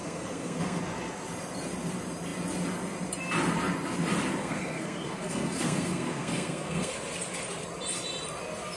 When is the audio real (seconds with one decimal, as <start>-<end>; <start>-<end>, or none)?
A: 0.8-4.4; 6.9-8.8